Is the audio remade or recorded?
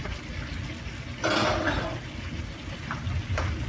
recorded